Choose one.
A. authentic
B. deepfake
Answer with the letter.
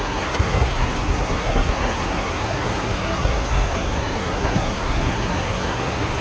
B